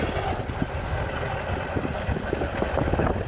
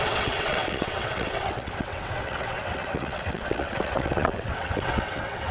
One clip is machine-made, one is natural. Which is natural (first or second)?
first